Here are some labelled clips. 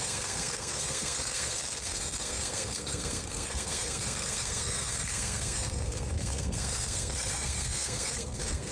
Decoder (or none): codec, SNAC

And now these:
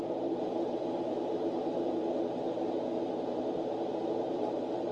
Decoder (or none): none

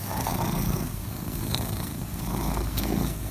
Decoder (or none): codec, SNAC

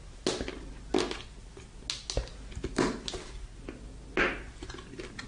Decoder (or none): none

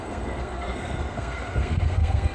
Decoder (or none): codec, SNAC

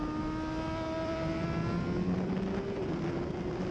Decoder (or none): none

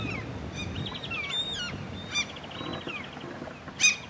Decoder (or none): none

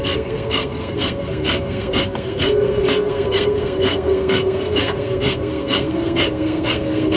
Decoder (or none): codec, SNAC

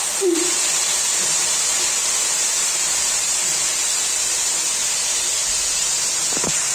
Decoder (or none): none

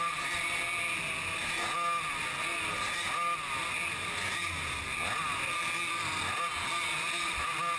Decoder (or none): none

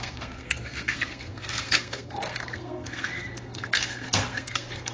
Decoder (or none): codec, SNAC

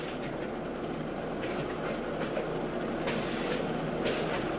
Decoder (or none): none